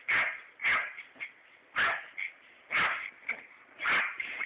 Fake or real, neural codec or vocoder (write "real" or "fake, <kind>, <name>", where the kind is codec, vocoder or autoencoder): real